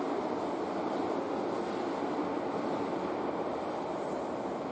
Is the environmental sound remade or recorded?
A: recorded